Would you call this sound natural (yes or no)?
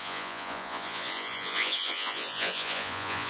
no